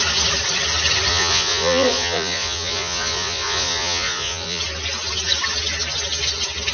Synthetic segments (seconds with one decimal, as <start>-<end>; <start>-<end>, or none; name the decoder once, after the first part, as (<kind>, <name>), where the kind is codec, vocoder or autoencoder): 1.1-4.6 (vocoder, Vocos)